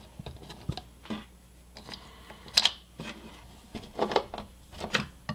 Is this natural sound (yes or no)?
yes